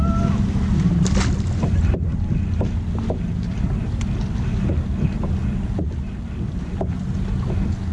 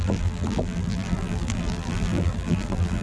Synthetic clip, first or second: second